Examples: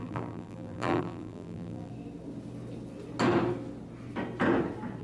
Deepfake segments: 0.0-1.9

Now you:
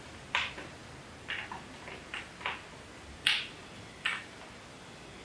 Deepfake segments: none